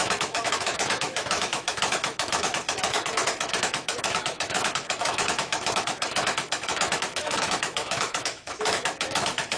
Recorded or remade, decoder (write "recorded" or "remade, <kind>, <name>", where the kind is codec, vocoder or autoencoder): remade, autoencoder, DAC-VAE